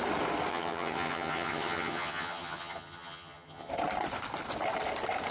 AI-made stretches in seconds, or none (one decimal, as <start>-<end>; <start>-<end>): 0.5-3.7